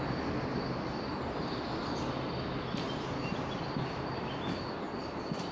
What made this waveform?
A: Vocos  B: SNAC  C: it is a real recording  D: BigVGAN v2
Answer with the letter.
C